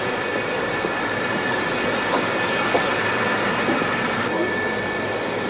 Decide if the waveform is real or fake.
real